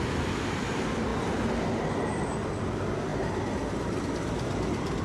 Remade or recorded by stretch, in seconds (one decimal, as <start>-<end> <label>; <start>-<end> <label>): 0.0-5.0 recorded